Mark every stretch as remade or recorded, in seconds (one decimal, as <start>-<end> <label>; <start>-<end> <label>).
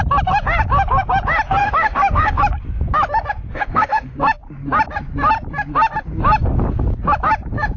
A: 0.0-1.6 recorded; 1.6-2.4 remade; 2.4-3.5 recorded; 3.5-4.2 remade; 4.2-7.8 recorded